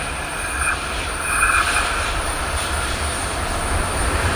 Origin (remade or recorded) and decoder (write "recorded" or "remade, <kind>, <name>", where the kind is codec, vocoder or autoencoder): recorded